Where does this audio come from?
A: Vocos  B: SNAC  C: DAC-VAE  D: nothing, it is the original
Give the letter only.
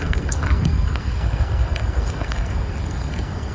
B